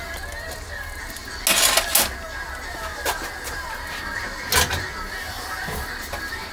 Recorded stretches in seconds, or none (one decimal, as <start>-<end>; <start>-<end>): 0.0-6.5